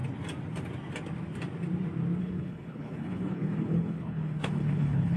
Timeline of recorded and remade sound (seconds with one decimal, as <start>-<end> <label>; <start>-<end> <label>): 0.0-2.2 recorded; 2.2-5.2 remade